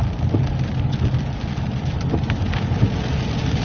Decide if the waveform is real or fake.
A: real